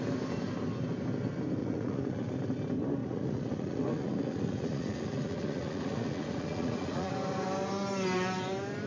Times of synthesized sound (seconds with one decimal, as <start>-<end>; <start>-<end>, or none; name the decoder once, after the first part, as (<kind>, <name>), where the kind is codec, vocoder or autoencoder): 1.6-2.3 (vocoder, Vocos); 3.0-7.1